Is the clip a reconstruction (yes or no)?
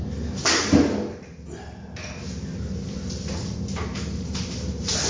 no